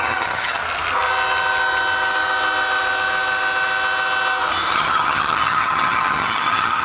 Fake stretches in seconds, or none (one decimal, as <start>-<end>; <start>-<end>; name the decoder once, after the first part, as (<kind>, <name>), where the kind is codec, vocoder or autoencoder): 0.0-0.6 (vocoder, HiFi-GAN); 4.7-6.8